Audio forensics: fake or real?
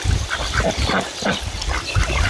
real